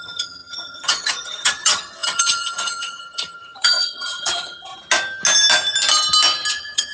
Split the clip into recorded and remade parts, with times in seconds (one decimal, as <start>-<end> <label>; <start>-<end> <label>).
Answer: 0.0-4.7 remade; 4.7-6.5 recorded; 6.5-6.9 remade